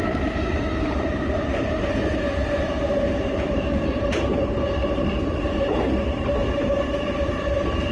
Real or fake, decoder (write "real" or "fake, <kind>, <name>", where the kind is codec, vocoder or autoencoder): fake, vocoder, BigVGAN v2